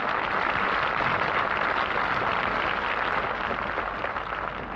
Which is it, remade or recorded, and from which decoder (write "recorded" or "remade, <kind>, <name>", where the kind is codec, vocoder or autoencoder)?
recorded